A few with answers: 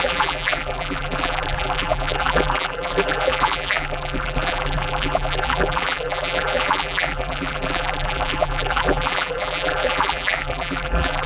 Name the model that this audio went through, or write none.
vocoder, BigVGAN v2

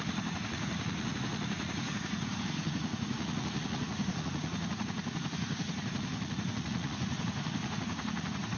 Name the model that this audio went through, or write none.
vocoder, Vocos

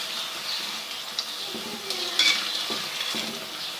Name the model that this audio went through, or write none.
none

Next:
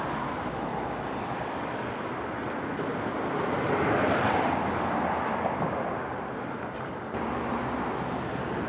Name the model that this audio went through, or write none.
none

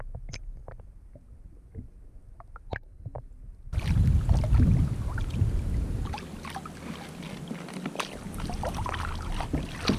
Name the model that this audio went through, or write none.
none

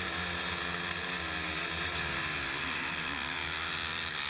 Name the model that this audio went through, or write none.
none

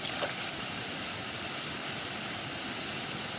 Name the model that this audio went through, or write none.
none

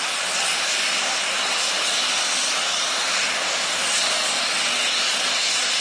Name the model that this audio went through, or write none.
none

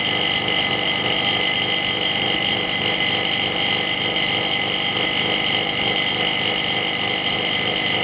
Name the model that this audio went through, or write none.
none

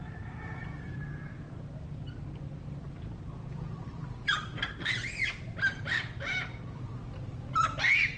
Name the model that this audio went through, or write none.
none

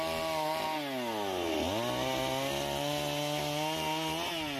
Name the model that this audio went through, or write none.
none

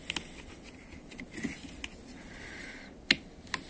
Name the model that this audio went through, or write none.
none